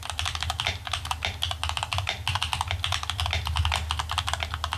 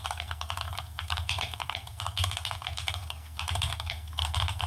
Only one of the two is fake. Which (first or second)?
second